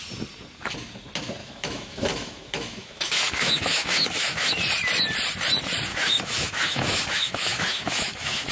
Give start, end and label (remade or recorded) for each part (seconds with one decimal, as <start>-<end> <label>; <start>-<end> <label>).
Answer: 0.0-1.4 recorded; 1.4-4.5 remade; 4.5-5.9 recorded; 5.9-8.5 remade